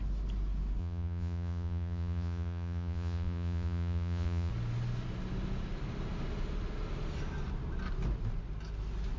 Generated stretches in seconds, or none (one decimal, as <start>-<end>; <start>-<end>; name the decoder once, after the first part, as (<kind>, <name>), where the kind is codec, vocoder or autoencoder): 0.8-4.5 (vocoder, Vocos)